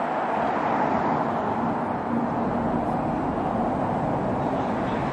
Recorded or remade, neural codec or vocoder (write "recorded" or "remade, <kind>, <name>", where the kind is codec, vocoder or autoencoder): recorded